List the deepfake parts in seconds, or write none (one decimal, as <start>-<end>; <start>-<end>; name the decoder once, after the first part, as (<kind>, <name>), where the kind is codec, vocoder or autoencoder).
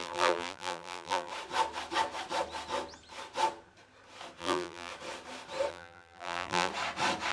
0.0-1.3 (vocoder, BigVGAN v2); 4.4-4.9; 5.7-6.7